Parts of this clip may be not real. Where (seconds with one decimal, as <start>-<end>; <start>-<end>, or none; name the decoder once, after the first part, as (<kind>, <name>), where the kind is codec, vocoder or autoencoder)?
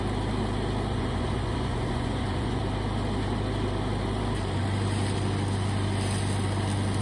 0.9-2.6 (vocoder, Vocos)